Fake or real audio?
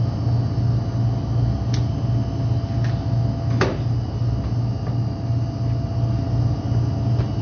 real